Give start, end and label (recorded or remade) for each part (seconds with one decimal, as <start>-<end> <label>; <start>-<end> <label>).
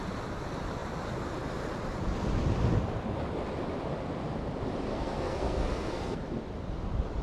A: 0.0-4.9 recorded; 4.9-6.2 remade; 6.2-7.2 recorded